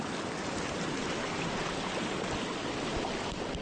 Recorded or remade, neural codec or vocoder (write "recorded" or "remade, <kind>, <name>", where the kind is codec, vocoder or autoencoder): recorded